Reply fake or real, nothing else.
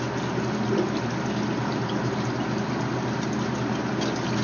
real